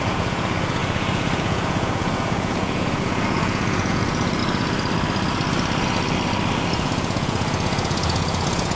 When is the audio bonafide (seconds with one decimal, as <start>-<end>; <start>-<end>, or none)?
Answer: 4.4-6.7